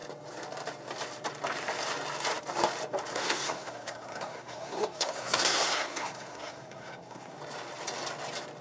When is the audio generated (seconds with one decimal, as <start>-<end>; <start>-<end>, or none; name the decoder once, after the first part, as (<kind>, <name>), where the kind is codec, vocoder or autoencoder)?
3.1-7.4 (codec, SNAC)